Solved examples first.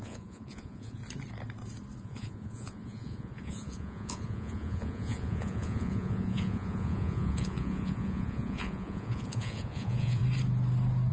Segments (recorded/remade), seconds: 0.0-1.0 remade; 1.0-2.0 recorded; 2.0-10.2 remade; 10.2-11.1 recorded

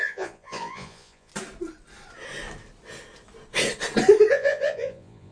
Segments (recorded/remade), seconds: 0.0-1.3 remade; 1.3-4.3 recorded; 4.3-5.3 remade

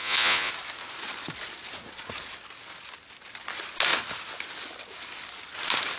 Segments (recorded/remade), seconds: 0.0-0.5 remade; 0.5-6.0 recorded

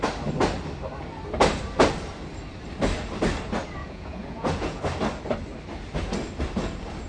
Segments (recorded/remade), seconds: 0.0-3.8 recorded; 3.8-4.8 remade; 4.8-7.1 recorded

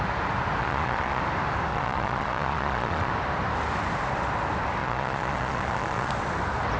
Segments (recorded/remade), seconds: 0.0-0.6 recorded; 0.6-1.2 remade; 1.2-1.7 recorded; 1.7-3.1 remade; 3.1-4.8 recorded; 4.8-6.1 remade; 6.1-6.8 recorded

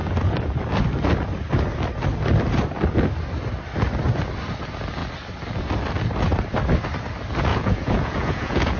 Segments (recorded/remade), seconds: 0.0-7.5 recorded; 7.5-8.8 remade